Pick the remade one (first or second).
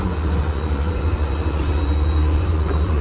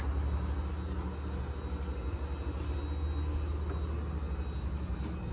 first